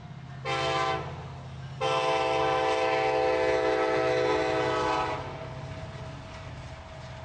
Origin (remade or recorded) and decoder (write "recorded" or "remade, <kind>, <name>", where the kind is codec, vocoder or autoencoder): recorded